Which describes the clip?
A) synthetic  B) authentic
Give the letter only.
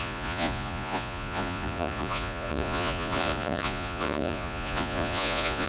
A